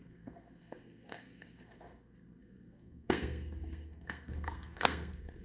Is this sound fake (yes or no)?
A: yes